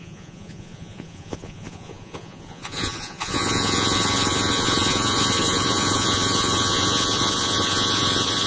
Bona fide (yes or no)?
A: no